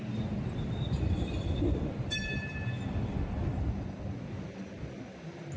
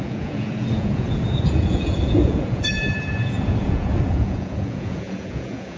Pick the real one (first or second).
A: first